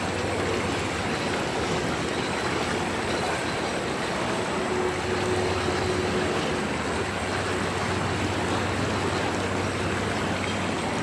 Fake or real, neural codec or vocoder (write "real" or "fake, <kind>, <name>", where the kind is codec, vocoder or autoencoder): real